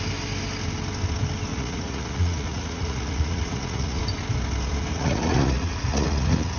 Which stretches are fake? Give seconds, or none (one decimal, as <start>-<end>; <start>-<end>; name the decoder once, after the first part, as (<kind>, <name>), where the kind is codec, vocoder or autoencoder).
1.5-4.0 (vocoder, Vocos); 4.9-6.6